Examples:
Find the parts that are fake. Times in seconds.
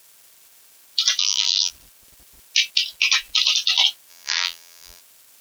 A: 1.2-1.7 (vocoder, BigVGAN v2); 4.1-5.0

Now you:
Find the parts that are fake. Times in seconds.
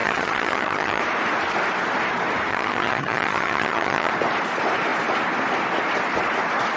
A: 0.0-1.0 (vocoder, HiFi-GAN); 2.5-4.1